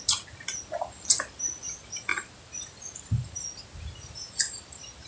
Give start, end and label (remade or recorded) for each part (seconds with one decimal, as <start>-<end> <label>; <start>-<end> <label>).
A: 0.0-5.1 recorded